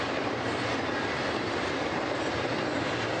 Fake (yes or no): no